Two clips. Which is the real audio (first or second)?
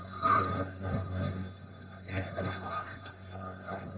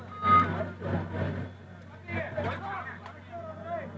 second